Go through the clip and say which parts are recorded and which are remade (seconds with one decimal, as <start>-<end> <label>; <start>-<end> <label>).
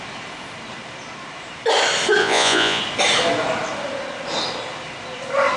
0.0-2.2 recorded; 2.2-2.8 remade; 2.8-5.6 recorded